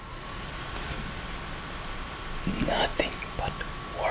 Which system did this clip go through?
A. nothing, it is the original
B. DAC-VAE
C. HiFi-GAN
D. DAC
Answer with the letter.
A